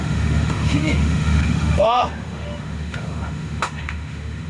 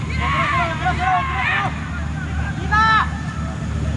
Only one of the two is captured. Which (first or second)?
second